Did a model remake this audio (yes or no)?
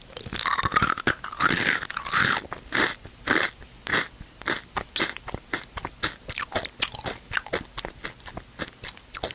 no